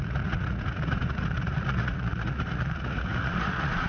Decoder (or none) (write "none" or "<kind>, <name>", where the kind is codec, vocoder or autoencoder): vocoder, Vocos